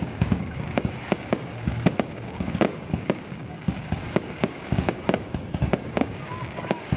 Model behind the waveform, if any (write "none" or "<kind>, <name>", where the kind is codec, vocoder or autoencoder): codec, DAC